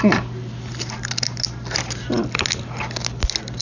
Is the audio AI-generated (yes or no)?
no